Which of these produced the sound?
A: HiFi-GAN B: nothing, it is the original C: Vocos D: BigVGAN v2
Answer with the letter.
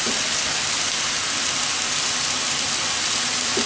B